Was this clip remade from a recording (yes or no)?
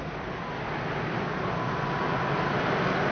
no